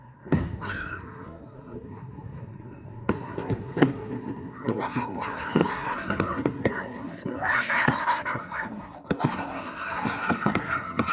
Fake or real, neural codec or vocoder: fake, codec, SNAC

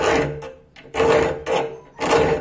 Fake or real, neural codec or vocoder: real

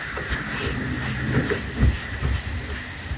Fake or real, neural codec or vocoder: real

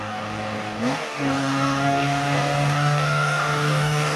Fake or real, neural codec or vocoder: fake, codec, DAC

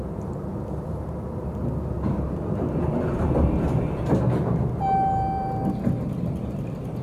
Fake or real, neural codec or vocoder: fake, vocoder, BigVGAN v2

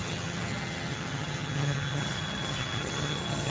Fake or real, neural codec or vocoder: fake, vocoder, HiFi-GAN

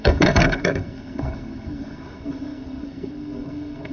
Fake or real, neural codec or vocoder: fake, codec, SNAC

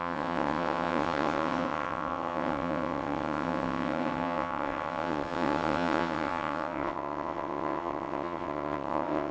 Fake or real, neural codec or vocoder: fake, vocoder, WaveNeXt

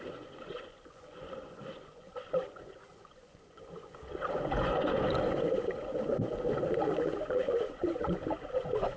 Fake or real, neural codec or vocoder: fake, vocoder, Vocos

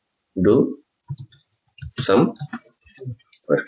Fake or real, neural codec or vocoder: fake, vocoder, BigVGAN v2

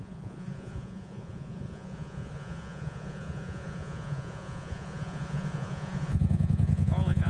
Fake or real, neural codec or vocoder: fake, vocoder, Vocos